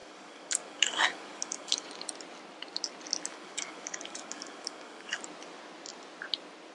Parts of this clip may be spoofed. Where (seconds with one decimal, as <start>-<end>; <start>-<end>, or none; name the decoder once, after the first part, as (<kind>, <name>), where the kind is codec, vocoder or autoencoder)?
0.0-1.9 (codec, DAC); 3.3-5.2